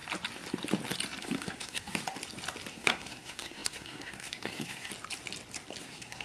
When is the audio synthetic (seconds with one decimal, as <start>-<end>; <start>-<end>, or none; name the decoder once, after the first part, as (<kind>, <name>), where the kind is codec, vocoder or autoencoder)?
1.2-2.0 (codec, SNAC); 2.7-4.9; 5.8-6.2

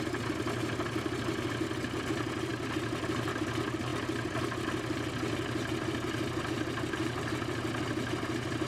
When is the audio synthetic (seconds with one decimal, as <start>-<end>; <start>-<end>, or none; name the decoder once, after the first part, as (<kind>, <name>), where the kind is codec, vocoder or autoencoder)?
none